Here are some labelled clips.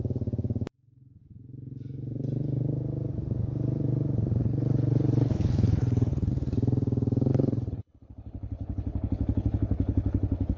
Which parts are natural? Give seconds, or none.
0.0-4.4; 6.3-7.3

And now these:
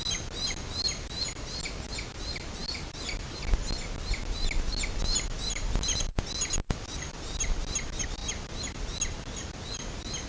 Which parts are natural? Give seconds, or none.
0.0-10.3

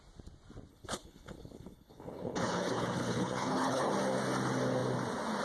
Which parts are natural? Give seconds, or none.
0.0-0.7; 3.9-5.4

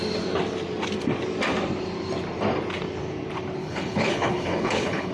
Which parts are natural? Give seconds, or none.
0.0-3.6